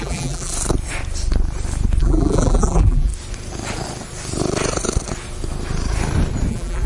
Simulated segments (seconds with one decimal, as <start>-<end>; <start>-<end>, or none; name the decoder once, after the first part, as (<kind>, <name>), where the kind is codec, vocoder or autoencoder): 0.0-0.5 (vocoder, BigVGAN v2); 2.0-3.1; 6.5-6.9